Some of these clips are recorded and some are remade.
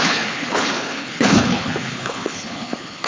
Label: remade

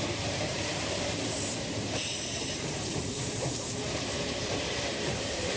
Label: remade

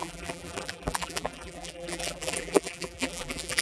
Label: remade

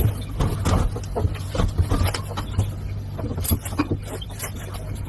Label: recorded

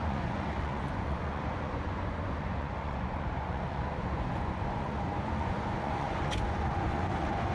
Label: remade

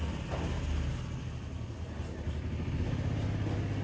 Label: recorded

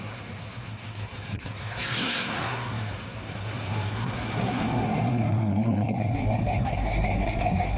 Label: remade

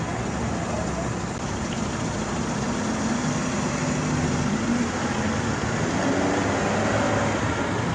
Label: recorded